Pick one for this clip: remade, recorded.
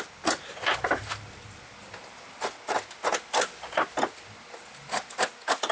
recorded